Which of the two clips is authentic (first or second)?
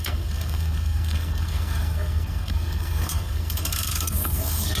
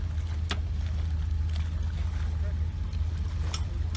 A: second